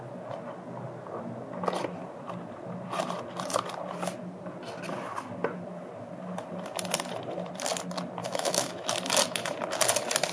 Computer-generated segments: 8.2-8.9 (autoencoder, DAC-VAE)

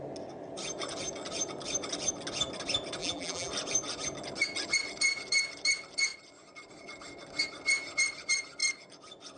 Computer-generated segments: 3.0-3.5 (vocoder, BigVGAN v2)

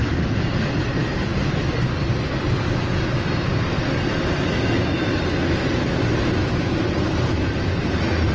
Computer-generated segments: none

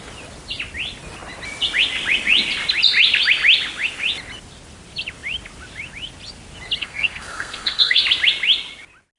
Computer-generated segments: 6.8-8.0 (codec, SNAC)